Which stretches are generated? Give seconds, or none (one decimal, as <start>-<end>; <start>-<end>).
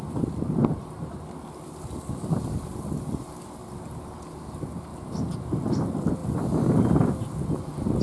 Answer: none